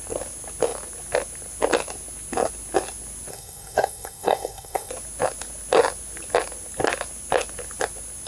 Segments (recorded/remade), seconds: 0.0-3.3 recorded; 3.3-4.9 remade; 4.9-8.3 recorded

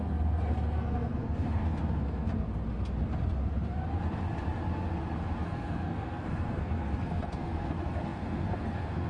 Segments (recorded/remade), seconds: 0.0-2.3 remade; 2.3-5.4 recorded; 5.4-9.1 remade

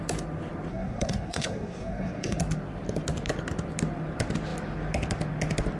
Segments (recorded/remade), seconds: 0.0-0.7 recorded; 0.7-2.4 remade; 2.4-5.8 recorded

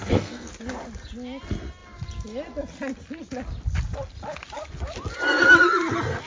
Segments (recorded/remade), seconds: 0.0-0.5 remade; 0.5-6.3 recorded

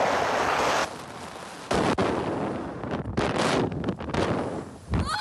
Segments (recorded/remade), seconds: 0.0-5.2 recorded

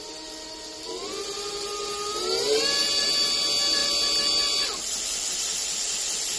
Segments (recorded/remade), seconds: 0.0-6.4 recorded

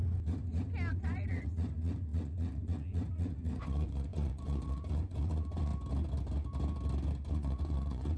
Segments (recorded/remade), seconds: 0.0-0.9 recorded; 0.9-5.7 remade; 5.7-7.3 recorded; 7.3-8.2 remade